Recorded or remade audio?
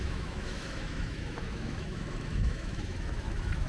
remade